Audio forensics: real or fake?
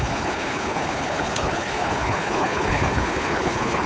fake